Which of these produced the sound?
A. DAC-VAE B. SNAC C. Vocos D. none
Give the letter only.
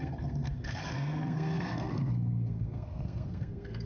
B